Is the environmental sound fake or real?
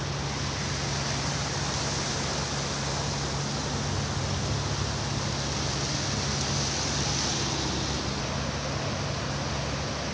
real